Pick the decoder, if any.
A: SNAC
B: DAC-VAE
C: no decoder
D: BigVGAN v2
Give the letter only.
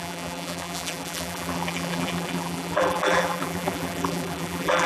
D